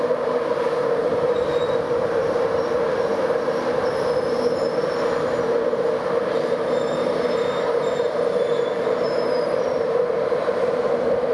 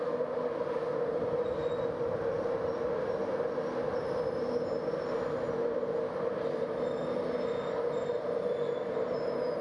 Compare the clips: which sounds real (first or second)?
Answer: second